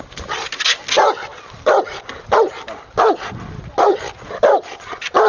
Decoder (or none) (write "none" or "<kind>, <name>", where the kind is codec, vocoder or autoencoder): none